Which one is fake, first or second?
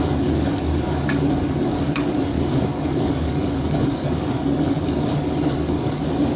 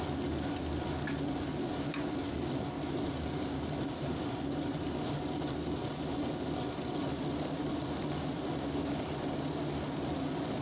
first